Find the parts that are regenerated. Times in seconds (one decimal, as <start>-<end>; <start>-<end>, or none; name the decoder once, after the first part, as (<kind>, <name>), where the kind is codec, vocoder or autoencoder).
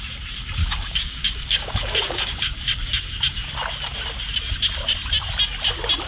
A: 0.6-3.5 (codec, DAC)